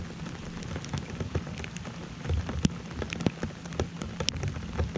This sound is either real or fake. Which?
real